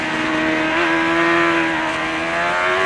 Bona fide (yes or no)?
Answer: yes